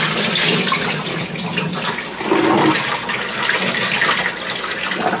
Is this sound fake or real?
real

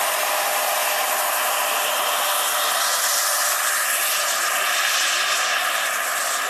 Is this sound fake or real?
real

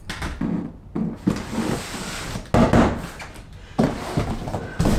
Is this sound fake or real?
real